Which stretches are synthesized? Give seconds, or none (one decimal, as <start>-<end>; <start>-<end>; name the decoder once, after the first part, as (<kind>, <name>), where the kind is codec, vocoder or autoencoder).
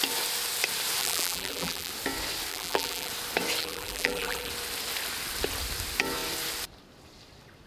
1.0-1.9 (vocoder, BigVGAN v2); 2.5-3.1; 3.6-4.5